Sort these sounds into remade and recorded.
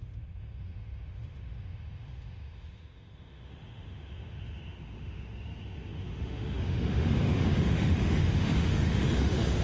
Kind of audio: remade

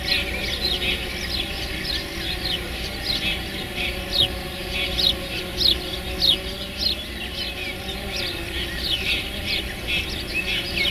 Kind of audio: recorded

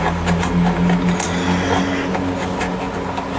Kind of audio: recorded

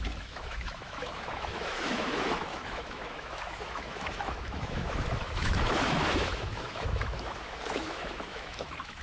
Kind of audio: remade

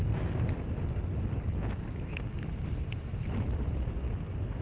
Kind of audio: recorded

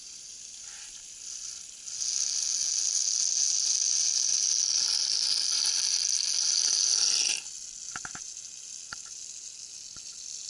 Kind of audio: recorded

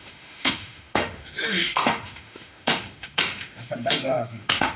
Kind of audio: remade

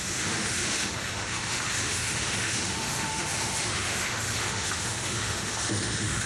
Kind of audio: remade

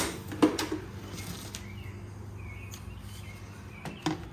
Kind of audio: recorded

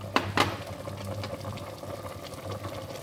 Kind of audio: recorded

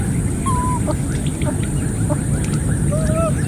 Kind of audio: recorded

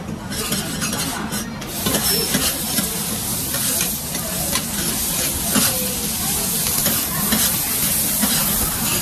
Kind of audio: recorded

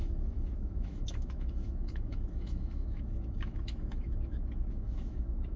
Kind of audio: remade